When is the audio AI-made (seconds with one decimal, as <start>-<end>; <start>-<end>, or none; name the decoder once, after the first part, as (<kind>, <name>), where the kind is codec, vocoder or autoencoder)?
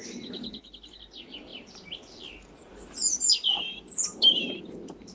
none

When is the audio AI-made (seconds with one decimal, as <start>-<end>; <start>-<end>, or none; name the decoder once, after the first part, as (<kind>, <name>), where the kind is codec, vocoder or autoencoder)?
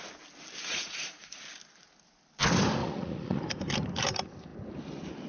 0.6-1.4 (vocoder, Vocos); 2.8-3.4